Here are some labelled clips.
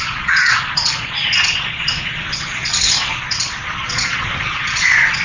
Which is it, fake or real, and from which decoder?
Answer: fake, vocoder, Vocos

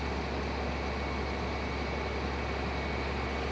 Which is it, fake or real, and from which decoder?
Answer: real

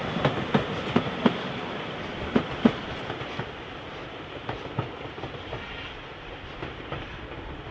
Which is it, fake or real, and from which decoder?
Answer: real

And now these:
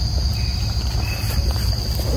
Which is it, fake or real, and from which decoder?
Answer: real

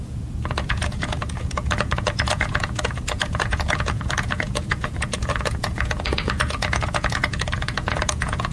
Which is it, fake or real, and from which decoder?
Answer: fake, vocoder, Vocos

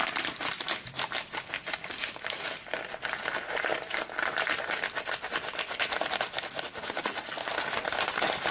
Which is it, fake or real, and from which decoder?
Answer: real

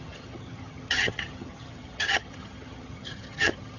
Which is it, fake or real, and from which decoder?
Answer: fake, vocoder, HiFi-GAN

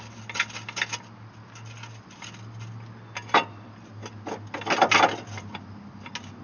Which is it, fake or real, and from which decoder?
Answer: real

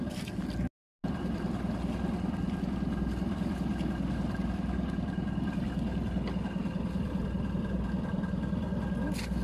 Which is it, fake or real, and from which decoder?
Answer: real